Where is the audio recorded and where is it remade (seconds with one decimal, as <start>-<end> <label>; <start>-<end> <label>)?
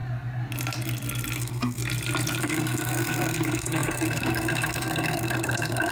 0.0-1.4 recorded; 1.4-1.8 remade; 1.8-2.4 recorded; 2.4-5.9 remade